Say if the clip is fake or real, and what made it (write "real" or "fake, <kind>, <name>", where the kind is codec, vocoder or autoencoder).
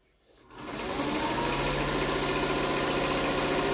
real